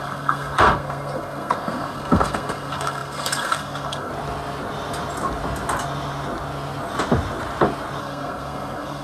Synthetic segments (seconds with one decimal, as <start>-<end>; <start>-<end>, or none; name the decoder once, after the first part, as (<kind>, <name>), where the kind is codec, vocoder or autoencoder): 0.0-4.1 (codec, SNAC); 8.0-9.0